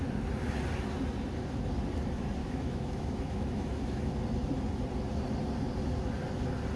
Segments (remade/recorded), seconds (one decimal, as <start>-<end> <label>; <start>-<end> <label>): 0.0-2.4 recorded; 2.4-4.1 remade; 4.1-6.8 recorded